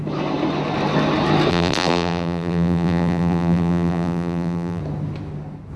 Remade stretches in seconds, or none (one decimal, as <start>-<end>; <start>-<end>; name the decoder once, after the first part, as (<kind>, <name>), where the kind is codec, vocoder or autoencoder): 1.5-4.8 (vocoder, BigVGAN v2)